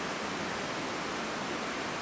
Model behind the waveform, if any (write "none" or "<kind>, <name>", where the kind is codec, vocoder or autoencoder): none